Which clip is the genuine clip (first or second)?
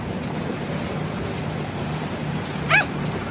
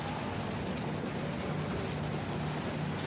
second